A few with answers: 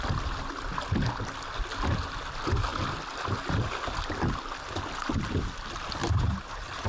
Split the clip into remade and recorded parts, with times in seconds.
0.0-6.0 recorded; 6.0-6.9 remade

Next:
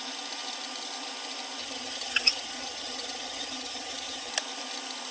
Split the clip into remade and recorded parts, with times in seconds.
0.0-1.6 recorded; 1.6-4.3 remade; 4.3-5.1 recorded

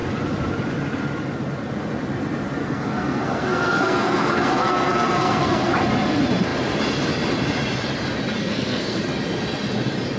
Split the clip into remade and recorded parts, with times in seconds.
0.0-2.6 recorded; 2.6-5.7 remade; 5.7-8.4 recorded; 8.4-9.0 remade; 9.0-10.2 recorded

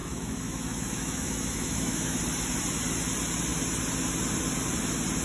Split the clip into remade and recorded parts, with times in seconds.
0.0-2.2 remade; 2.2-5.2 recorded

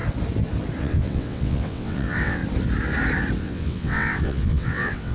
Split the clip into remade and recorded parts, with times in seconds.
0.0-0.8 recorded; 0.8-2.4 remade; 2.4-3.4 recorded; 3.4-5.1 remade

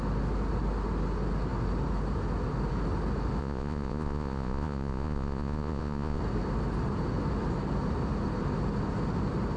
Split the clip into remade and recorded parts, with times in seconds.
0.0-3.4 recorded; 3.4-6.2 remade; 6.2-9.6 recorded

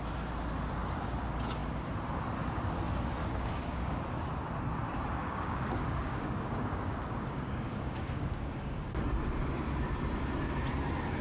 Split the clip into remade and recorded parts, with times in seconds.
0.0-3.2 recorded; 3.2-4.0 remade; 4.0-5.2 recorded; 5.2-9.0 remade; 9.0-11.2 recorded

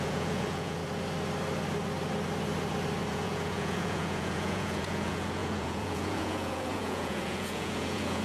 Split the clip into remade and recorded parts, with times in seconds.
0.0-0.8 remade; 0.8-3.1 recorded; 3.1-8.2 remade